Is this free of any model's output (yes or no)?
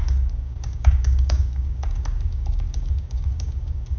no